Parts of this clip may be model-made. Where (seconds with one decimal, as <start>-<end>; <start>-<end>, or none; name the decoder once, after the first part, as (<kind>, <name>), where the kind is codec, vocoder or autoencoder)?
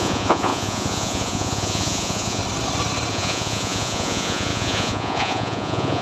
0.0-2.4 (vocoder, Vocos); 3.1-6.0